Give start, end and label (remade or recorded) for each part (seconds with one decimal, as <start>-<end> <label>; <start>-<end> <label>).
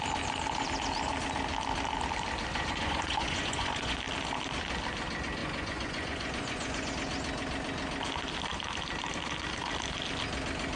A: 0.0-2.5 recorded; 2.5-4.0 remade; 4.0-5.4 recorded; 5.4-6.9 remade; 6.9-10.8 recorded